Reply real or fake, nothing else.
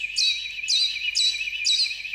real